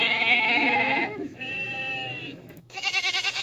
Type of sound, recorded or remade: remade